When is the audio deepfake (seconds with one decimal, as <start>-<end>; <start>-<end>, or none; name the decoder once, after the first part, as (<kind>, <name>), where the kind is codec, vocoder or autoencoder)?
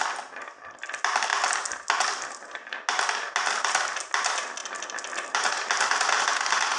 none